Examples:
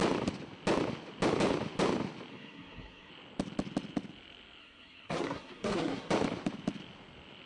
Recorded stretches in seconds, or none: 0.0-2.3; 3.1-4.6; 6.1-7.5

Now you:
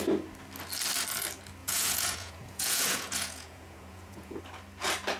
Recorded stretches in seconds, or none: 0.0-1.6; 4.4-5.2

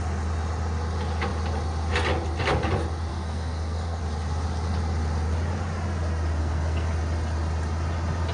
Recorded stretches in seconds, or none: 0.0-3.1; 4.0-6.4; 6.9-8.3

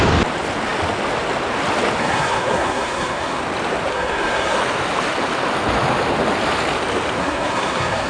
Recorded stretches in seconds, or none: 0.0-2.0; 3.4-3.9; 4.6-7.2

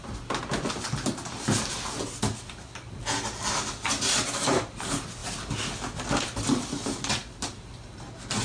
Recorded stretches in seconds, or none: 0.0-8.4